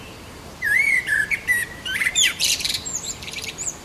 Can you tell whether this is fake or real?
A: fake